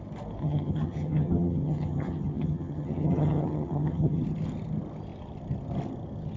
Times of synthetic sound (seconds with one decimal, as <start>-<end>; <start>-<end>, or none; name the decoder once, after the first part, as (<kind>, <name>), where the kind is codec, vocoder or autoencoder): 0.4-4.2 (vocoder, HiFi-GAN)